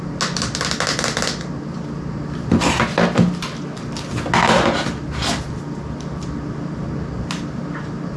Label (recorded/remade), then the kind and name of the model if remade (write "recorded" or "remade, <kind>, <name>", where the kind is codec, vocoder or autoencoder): recorded